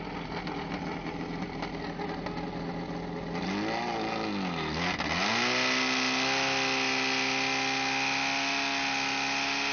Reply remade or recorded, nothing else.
recorded